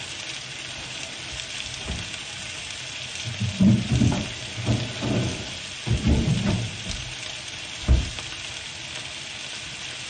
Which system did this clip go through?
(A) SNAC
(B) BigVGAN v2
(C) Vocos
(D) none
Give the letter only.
D